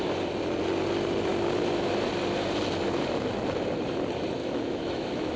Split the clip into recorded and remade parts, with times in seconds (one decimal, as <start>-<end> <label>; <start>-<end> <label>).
0.0-4.4 recorded; 4.4-5.4 remade

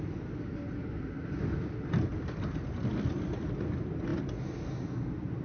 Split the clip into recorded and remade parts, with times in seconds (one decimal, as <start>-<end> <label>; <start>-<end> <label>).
0.0-5.4 recorded

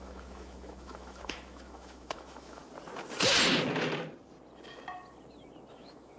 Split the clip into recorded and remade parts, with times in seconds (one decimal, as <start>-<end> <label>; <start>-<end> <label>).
0.0-2.6 remade; 2.6-5.7 recorded; 5.7-6.2 remade